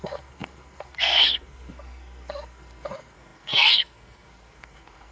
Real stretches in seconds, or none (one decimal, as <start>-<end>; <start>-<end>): none